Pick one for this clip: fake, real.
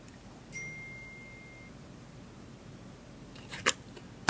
real